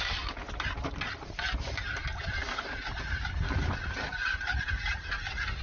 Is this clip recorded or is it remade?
recorded